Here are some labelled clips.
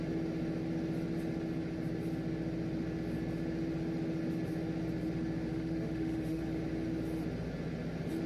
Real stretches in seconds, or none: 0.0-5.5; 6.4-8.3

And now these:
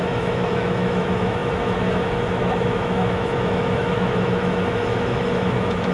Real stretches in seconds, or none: none

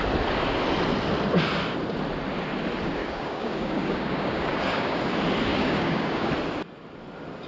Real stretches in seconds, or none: 0.0-3.0; 5.0-5.5; 6.3-7.5

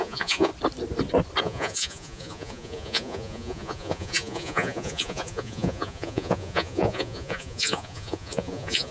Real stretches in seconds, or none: 0.5-1.4

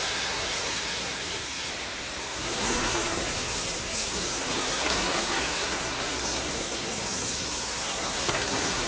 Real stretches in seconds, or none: 1.7-2.2